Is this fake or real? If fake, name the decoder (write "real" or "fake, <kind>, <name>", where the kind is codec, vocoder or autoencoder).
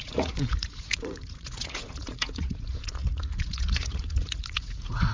fake, vocoder, Vocos